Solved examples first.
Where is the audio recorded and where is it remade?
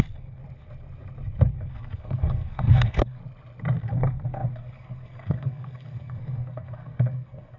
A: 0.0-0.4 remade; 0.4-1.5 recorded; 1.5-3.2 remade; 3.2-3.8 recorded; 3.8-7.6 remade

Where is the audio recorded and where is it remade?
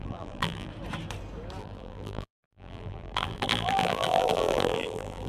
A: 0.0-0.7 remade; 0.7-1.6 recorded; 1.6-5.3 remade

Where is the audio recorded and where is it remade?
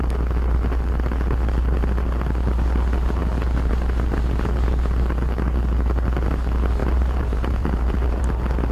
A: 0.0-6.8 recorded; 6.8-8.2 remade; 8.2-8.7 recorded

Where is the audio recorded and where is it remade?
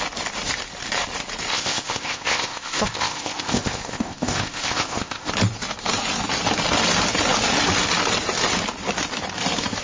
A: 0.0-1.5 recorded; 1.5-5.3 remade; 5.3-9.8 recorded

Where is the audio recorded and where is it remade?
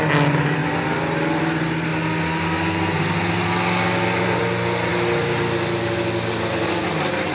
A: 0.0-7.3 recorded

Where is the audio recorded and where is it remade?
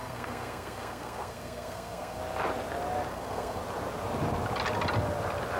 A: 0.0-2.2 remade; 2.2-3.1 recorded; 3.1-3.6 remade; 3.6-5.6 recorded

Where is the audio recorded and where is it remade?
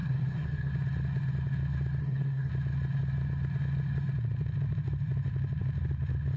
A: 0.0-0.7 remade; 0.7-2.0 recorded; 2.0-2.5 remade; 2.5-6.4 recorded